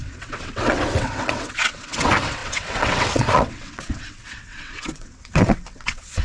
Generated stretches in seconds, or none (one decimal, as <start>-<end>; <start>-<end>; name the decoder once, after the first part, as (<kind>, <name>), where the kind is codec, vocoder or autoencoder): 0.0-6.2 (vocoder, WaveNeXt)